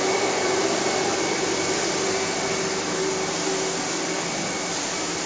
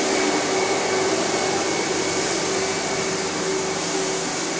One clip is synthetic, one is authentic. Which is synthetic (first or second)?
first